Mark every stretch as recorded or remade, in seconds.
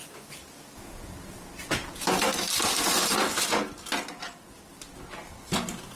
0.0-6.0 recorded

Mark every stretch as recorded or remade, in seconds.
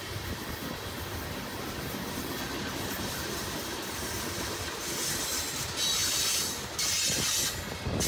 0.0-6.0 recorded; 6.0-6.6 remade; 6.6-8.1 recorded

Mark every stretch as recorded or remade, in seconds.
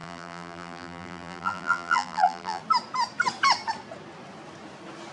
0.0-2.6 remade; 2.6-5.1 recorded